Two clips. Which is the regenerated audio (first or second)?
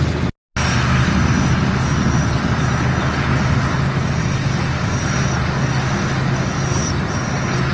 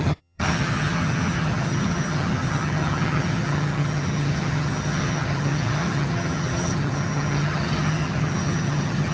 second